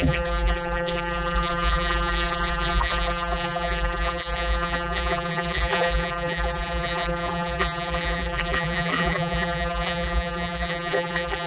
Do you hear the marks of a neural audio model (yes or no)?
yes